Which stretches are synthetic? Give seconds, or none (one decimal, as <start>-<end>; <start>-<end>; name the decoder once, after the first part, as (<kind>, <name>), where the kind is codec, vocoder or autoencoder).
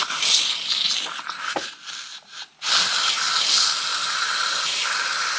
2.1-2.8 (vocoder, BigVGAN v2); 3.9-4.8